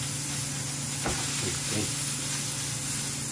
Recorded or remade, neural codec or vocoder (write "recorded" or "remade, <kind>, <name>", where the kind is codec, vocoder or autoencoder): recorded